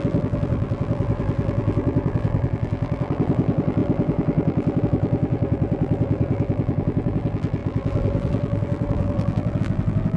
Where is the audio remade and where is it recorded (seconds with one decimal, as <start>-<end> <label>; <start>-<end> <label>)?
0.0-10.2 remade